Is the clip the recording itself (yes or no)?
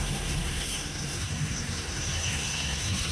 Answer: no